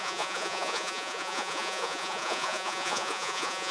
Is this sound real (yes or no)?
no